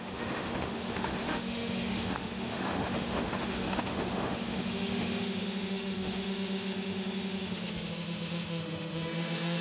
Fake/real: fake